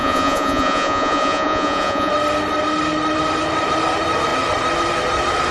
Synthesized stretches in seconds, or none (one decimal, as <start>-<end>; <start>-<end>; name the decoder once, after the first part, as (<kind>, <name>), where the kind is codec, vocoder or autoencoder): 0.0-2.1 (vocoder, Vocos)